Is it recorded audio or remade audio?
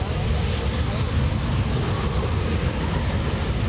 recorded